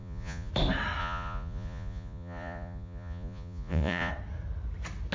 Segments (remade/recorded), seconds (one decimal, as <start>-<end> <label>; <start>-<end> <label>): 0.0-0.5 remade; 0.5-1.0 recorded; 1.0-4.1 remade; 4.1-5.1 recorded